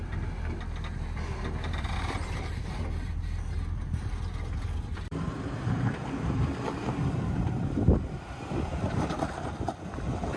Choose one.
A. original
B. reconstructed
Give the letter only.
B